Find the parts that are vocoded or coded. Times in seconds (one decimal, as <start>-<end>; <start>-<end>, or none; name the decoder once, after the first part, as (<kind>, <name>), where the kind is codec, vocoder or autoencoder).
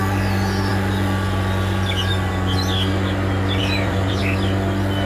3.6-4.2 (vocoder, BigVGAN v2)